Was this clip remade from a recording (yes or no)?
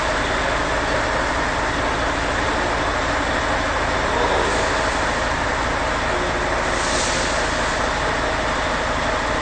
no